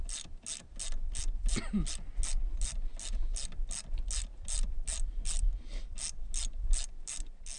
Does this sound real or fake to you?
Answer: real